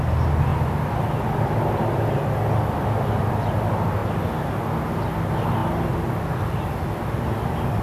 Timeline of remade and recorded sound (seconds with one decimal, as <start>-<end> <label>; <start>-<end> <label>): 0.0-7.8 recorded